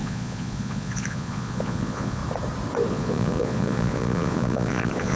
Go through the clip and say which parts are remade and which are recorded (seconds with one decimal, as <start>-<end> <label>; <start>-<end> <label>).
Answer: 0.0-2.2 remade; 2.2-2.9 recorded; 2.9-5.2 remade